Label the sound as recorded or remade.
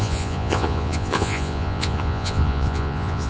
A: remade